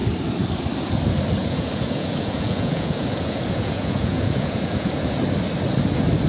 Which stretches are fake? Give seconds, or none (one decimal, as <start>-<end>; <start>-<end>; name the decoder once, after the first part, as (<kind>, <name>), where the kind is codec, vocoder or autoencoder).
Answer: 1.4-5.2 (vocoder, Vocos)